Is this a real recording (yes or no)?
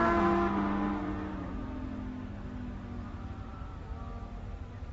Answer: yes